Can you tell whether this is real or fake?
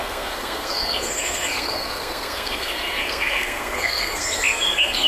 fake